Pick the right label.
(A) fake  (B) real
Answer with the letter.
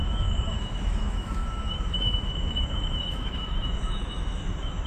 A